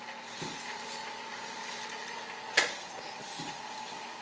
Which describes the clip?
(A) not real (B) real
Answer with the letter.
B